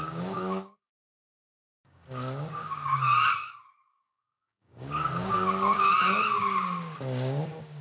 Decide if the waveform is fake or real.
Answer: fake